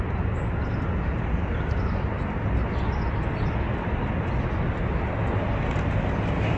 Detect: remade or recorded recorded